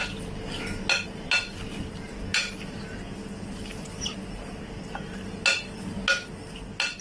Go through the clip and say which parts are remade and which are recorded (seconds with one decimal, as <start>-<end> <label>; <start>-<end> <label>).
0.0-7.0 recorded